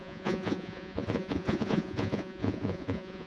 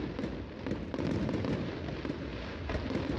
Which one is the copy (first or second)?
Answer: first